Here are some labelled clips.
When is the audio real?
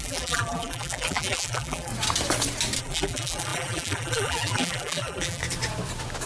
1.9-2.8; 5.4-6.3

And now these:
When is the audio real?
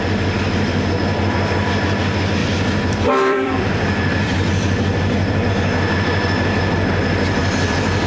0.0-2.4; 5.5-7.4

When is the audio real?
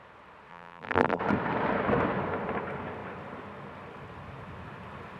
0.0-0.5; 1.2-5.2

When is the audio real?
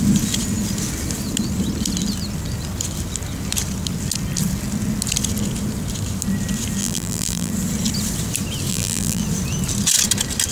0.0-6.8; 7.5-8.7; 9.2-10.5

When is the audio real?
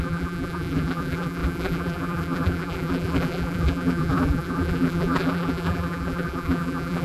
none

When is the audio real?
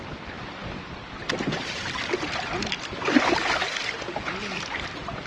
0.0-5.3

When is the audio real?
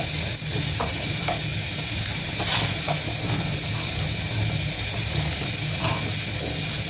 0.0-6.9